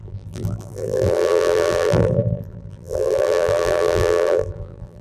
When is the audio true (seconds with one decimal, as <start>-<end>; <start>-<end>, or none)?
none